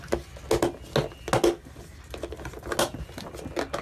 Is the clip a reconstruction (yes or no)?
no